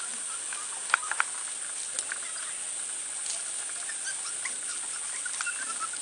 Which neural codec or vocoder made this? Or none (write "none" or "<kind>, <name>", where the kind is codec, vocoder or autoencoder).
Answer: none